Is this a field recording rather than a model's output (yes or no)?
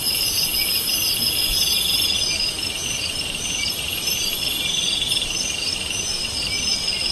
no